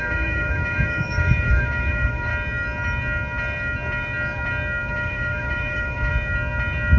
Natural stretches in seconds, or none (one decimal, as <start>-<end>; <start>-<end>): 2.3-4.9; 6.1-7.0